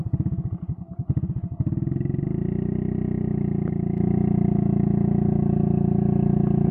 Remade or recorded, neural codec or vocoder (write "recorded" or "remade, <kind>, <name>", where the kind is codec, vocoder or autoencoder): recorded